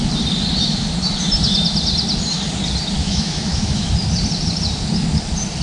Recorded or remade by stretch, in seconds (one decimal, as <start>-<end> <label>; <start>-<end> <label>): 0.0-3.0 recorded; 3.0-3.9 remade; 3.9-5.6 recorded